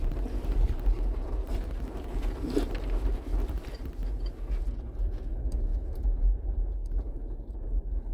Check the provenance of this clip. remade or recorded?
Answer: remade